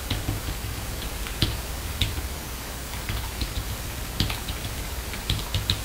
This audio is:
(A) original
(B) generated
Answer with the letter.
B